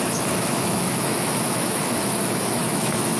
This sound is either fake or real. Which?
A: fake